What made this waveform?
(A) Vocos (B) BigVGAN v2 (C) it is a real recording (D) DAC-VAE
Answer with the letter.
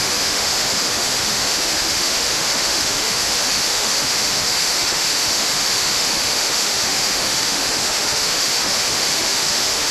D